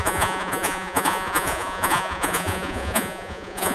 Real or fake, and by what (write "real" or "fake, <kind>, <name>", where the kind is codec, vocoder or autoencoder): fake, vocoder, Vocos